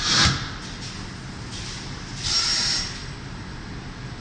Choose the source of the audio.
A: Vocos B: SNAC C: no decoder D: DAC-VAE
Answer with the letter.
C